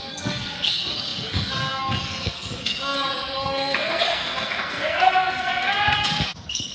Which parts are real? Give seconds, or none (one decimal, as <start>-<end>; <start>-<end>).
none